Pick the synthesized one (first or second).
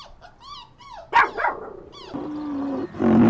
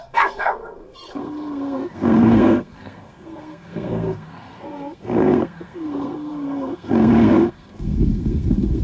second